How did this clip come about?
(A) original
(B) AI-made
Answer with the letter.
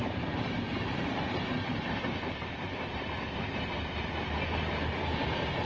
B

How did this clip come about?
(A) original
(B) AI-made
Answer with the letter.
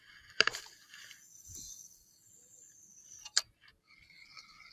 A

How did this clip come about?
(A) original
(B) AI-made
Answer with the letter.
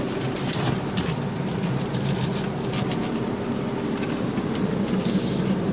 A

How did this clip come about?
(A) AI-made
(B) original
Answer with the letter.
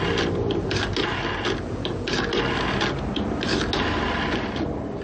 B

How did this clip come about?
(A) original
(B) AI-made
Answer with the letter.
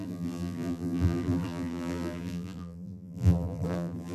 B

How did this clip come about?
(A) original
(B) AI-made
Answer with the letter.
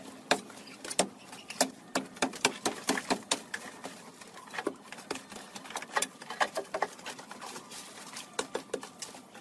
A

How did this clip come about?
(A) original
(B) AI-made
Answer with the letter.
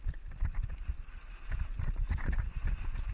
B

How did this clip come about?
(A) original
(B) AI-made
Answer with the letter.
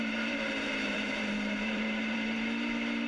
B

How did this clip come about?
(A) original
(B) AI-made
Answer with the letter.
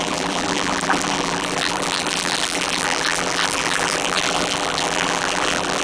B